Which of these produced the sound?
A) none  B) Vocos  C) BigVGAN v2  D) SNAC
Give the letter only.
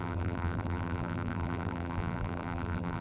C